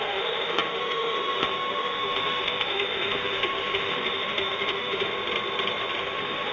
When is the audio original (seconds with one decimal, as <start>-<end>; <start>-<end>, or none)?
5.1-6.0